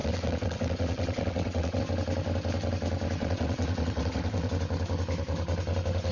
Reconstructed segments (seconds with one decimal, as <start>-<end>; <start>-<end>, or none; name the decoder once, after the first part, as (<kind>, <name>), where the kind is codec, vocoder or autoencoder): 0.0-1.8 (vocoder, WaveNeXt); 3.2-4.5